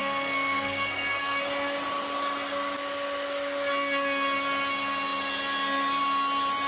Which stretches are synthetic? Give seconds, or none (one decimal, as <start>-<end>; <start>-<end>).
0.0-1.4